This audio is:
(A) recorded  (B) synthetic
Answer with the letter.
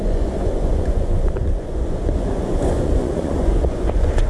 B